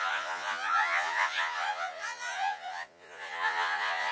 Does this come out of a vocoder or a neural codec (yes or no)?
yes